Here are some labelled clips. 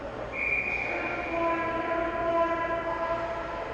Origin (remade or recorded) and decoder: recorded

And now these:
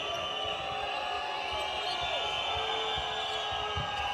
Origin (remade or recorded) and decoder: recorded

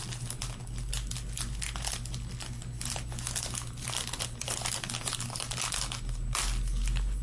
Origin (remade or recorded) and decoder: recorded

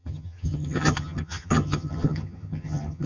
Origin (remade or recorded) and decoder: remade, vocoder, HiFi-GAN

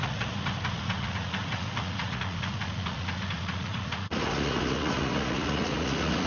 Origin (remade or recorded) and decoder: remade, vocoder, Vocos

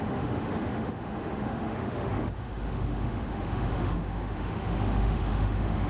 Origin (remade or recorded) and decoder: remade, autoencoder, DAC-VAE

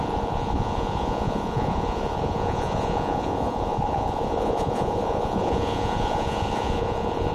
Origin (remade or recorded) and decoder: remade, vocoder, Vocos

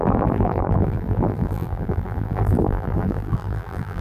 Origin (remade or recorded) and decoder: remade, vocoder, BigVGAN v2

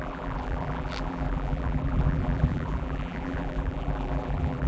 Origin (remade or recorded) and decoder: remade, vocoder, BigVGAN v2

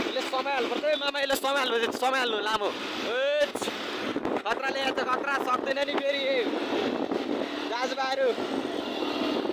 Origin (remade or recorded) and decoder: recorded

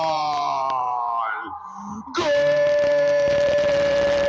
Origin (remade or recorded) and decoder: remade, vocoder, BigVGAN v2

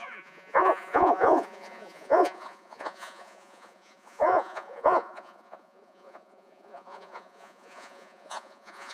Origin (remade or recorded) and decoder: remade, vocoder, Vocos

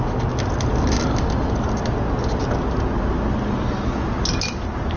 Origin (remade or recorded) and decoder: recorded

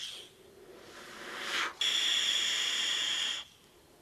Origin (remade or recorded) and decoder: recorded